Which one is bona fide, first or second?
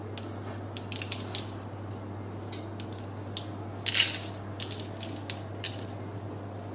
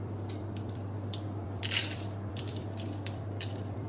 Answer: first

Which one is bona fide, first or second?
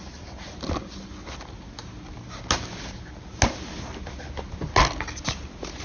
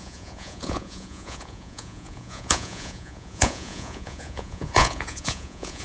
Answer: first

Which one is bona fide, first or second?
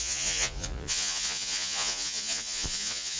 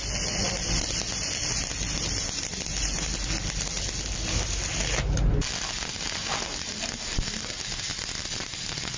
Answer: second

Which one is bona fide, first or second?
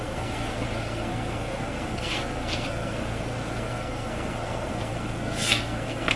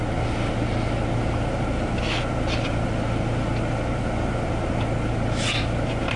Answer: second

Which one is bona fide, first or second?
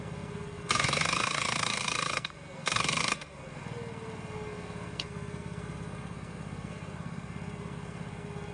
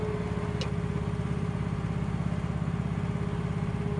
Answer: second